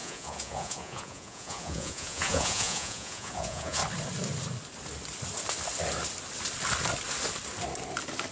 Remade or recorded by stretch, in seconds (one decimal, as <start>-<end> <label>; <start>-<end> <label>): 0.0-3.8 remade; 3.8-8.3 recorded